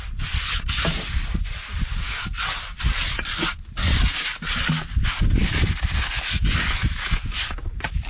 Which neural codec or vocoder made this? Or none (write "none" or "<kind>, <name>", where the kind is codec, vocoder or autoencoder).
none